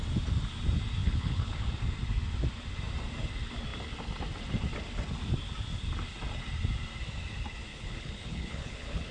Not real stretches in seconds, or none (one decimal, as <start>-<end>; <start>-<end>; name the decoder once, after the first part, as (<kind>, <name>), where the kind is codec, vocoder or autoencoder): 1.0-1.7 (codec, HILCodec); 7.7-9.1